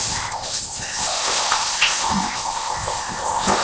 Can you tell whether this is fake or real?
fake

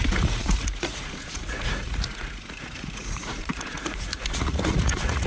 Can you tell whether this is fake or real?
fake